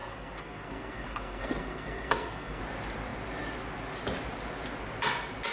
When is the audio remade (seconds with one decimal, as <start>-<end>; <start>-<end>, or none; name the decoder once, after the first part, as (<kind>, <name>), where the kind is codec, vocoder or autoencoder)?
0.0-2.6 (codec, SNAC)